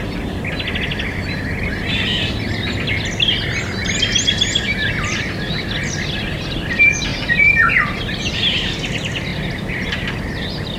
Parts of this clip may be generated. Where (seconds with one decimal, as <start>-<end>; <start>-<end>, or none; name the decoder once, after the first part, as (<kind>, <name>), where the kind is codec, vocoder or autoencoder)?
none